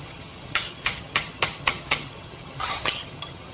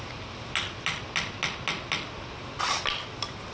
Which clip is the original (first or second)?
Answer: second